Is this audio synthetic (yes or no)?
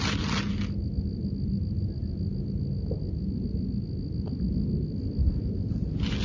no